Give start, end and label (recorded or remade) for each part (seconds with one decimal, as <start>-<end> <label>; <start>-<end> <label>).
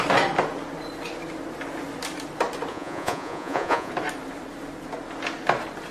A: 0.0-2.7 recorded; 2.7-3.9 remade; 3.9-5.9 recorded